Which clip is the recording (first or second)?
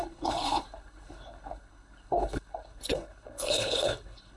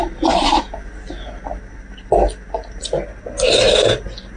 second